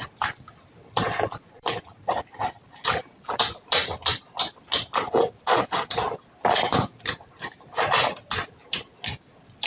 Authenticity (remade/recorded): recorded